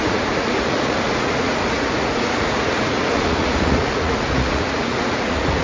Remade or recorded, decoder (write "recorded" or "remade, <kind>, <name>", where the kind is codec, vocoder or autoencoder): remade, vocoder, Vocos